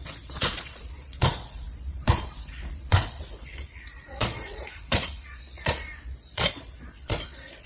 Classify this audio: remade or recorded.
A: remade